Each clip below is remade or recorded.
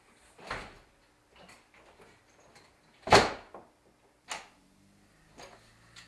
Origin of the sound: recorded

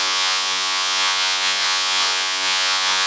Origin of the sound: remade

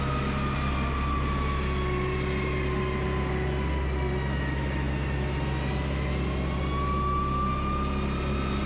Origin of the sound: recorded